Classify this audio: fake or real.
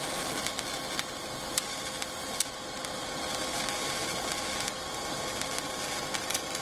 fake